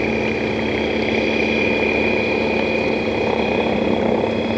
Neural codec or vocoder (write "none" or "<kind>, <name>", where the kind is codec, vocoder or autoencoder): none